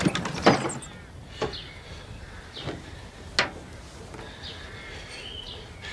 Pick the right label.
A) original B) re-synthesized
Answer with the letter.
A